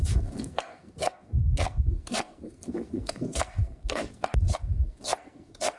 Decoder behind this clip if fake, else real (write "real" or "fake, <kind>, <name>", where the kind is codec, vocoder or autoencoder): fake, codec, SNAC